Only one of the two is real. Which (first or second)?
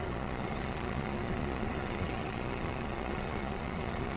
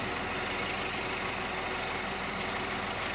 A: second